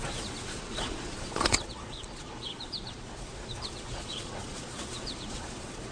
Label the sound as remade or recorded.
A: remade